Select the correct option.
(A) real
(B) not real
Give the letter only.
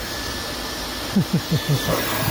A